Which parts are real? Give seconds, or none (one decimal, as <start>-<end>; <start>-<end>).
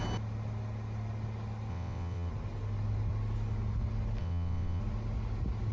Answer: 0.0-1.7; 2.3-4.2; 4.8-5.7